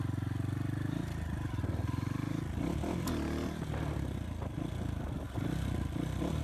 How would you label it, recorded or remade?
recorded